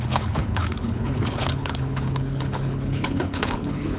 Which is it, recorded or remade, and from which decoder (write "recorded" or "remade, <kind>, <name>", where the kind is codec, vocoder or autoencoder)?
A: remade, codec, HILCodec